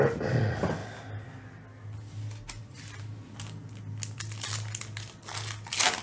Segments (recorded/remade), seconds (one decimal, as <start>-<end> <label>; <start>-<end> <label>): 0.0-6.0 recorded